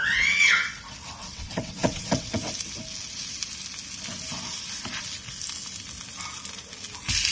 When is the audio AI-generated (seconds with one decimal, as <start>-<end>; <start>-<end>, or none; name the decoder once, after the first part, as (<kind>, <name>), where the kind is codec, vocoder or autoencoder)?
0.0-0.7 (vocoder, WaveNeXt); 1.2-2.5